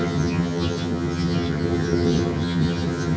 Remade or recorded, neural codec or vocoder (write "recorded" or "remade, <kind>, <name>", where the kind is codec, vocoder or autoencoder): remade, vocoder, HiFi-GAN